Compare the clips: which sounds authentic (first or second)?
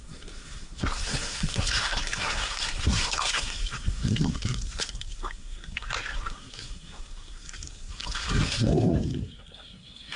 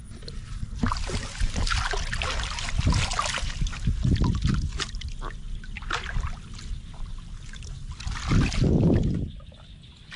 second